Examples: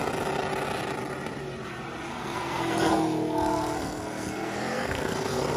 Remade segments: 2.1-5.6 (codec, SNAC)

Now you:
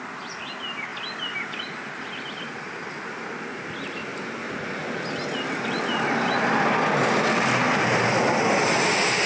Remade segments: 7.7-8.2 (vocoder, BigVGAN v2)

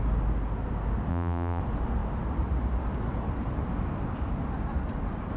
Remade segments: 1.1-1.6 (vocoder, BigVGAN v2)

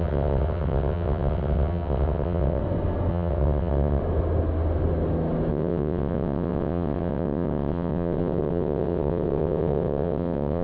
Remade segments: 0.0-2.6 (vocoder, WaveNeXt); 3.1-4.0; 5.5-10.6

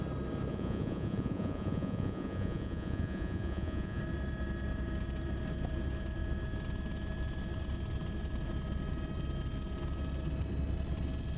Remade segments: 0.5-4.0 (vocoder, Vocos)

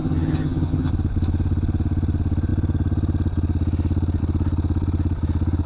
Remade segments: 0.0-0.9 (vocoder, HiFi-GAN)

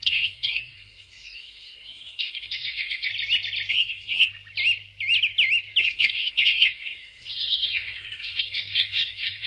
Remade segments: 0.0-3.1 (codec, SNAC); 3.7-4.3; 5.8-9.5

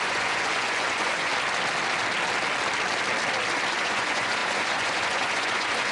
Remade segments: 0.0-1.3 (vocoder, Vocos); 3.7-5.9